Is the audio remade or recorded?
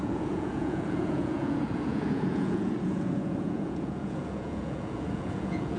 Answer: remade